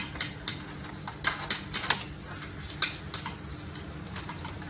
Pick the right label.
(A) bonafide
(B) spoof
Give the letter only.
A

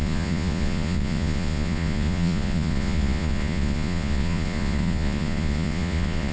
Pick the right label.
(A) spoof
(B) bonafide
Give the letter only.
A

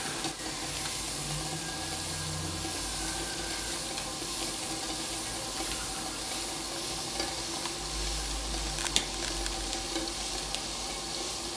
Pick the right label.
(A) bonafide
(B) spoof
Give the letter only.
A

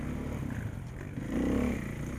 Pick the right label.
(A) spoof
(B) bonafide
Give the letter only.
B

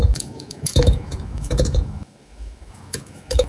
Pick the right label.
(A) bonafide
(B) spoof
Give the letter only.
B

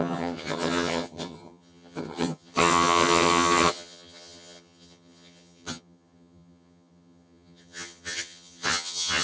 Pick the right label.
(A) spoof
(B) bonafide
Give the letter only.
A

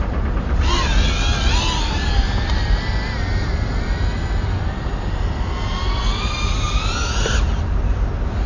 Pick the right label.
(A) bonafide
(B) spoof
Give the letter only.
A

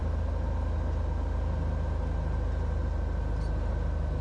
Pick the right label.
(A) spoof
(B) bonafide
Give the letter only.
B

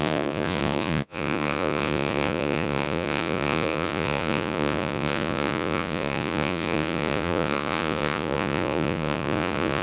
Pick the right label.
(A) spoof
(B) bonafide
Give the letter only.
A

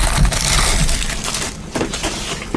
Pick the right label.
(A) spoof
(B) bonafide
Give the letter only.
B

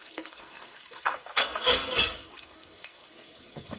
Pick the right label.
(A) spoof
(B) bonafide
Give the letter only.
A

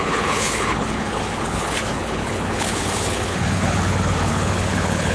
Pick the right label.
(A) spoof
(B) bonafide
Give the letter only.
A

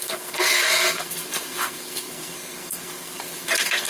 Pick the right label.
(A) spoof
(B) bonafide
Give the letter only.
A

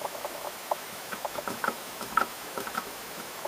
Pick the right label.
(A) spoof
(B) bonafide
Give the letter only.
A